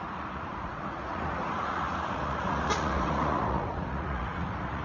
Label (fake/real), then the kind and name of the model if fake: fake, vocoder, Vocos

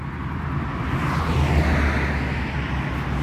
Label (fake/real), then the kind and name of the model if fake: real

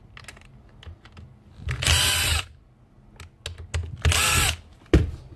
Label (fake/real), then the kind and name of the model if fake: real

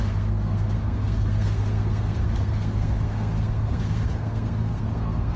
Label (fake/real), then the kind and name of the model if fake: fake, codec, SNAC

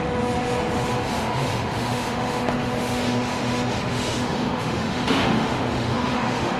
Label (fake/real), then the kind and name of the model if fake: fake, autoencoder, DAC-VAE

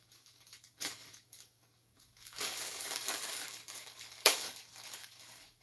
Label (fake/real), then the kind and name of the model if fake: fake, codec, DAC